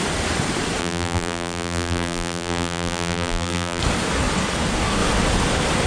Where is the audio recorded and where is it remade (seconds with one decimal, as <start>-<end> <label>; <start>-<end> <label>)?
0.0-0.8 recorded; 0.8-3.8 remade; 3.8-5.9 recorded